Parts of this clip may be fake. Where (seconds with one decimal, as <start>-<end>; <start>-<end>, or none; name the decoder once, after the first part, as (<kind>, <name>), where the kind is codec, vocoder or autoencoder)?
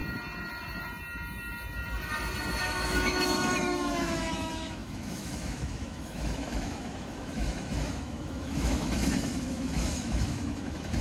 2.6-11.0 (autoencoder, DAC-VAE)